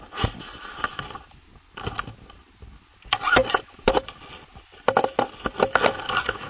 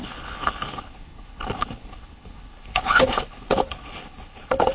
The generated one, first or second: second